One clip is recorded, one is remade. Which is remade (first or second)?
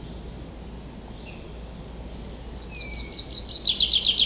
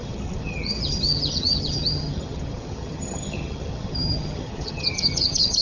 second